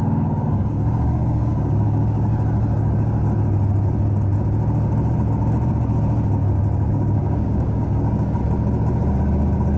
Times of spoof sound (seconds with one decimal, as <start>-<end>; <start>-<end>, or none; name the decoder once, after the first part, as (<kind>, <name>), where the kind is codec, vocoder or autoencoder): 0.0-2.3 (codec, DAC); 6.9-8.4